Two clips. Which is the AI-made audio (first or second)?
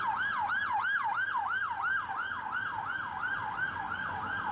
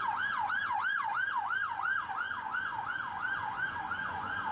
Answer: second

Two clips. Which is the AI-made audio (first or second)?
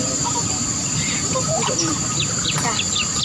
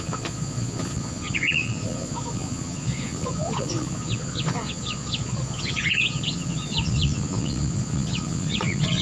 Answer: second